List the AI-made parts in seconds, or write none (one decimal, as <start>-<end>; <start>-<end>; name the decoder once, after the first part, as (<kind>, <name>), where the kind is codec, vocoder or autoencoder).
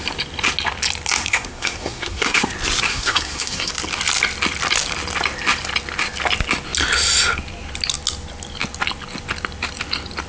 1.2-2.5 (codec, SNAC); 2.9-3.7